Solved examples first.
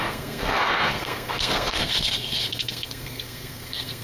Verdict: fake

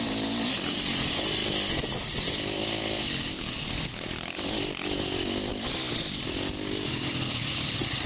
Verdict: real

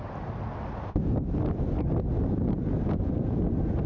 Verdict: real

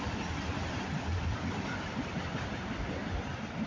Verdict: real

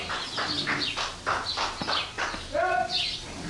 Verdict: real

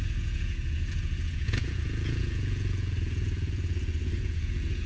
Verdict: fake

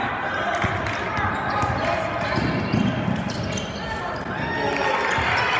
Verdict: real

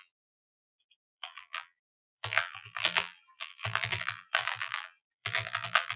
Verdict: fake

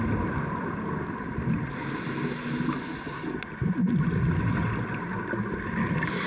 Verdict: real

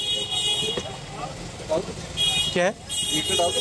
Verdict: real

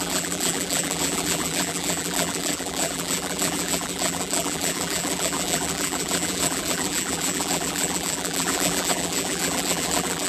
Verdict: fake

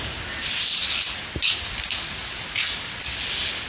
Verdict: real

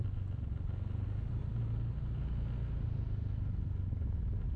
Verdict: real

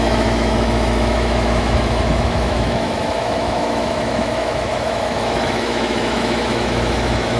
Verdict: fake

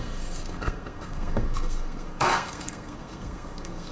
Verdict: fake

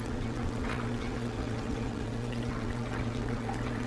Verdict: fake